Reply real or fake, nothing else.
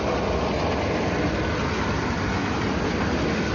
real